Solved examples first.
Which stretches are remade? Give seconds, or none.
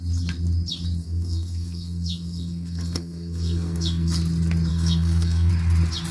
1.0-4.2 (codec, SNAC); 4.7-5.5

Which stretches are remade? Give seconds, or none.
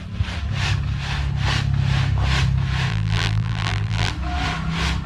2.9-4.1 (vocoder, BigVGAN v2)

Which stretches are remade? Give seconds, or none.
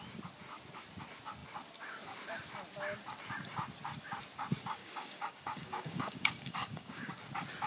4.8-7.1 (codec, DAC)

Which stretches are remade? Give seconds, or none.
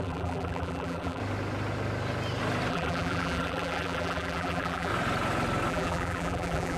0.0-1.2 (vocoder, BigVGAN v2); 2.7-4.9; 5.7-6.8